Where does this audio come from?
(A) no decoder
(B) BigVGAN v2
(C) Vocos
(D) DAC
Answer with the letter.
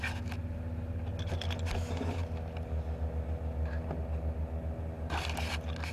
A